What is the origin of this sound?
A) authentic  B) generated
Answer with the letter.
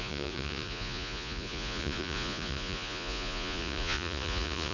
B